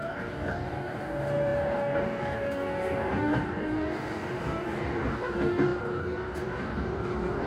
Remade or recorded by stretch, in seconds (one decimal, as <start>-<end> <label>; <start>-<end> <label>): 0.0-7.5 remade